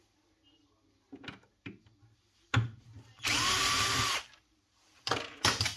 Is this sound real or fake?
real